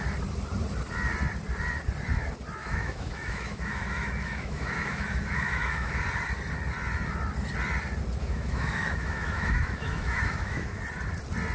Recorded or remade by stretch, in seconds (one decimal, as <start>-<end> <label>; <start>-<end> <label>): 0.0-2.6 recorded; 2.6-6.0 remade; 6.0-8.2 recorded; 8.2-10.8 remade; 10.8-11.5 recorded